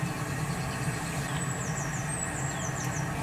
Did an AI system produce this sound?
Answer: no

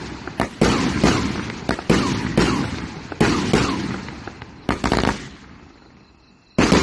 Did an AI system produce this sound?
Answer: no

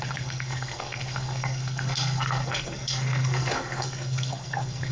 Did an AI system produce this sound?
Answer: yes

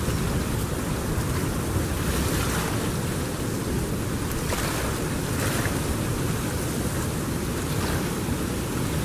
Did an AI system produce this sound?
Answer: no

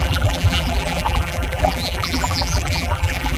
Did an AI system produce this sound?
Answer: yes